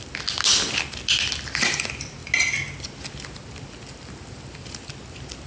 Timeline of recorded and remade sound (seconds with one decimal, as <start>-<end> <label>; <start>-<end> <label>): 0.0-5.5 recorded